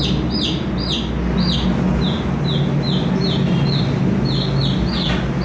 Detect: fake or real real